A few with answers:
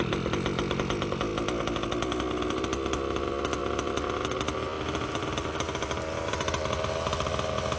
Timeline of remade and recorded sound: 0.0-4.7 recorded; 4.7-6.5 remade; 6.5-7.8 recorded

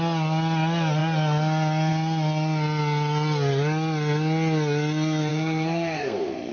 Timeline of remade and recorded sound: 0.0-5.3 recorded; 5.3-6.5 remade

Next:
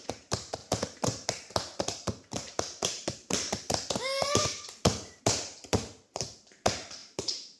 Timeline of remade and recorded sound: 0.0-7.6 remade

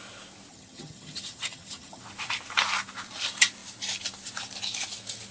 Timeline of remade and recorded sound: 0.0-0.5 recorded; 0.5-2.0 remade; 2.0-5.3 recorded

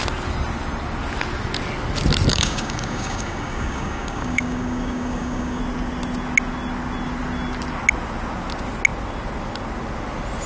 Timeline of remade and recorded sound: 0.0-2.3 recorded; 2.3-5.6 remade; 5.6-10.5 recorded